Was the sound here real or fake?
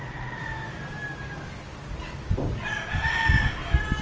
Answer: real